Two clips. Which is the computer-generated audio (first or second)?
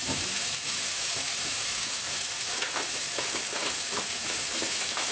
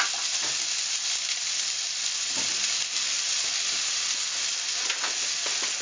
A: first